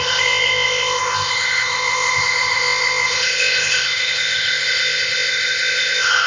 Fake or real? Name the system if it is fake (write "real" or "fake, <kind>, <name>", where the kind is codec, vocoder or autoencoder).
fake, codec, ZipCodec